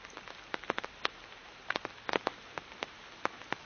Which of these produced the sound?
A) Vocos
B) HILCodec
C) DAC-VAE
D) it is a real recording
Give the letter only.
D